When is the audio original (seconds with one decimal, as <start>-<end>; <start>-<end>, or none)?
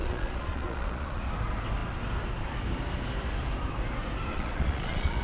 1.2-4.3